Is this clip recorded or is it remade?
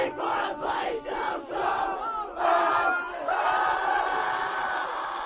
recorded